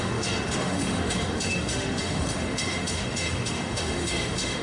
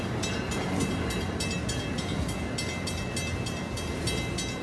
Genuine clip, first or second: second